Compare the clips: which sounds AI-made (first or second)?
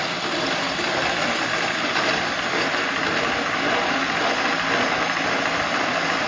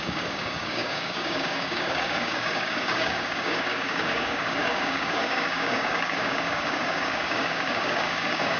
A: second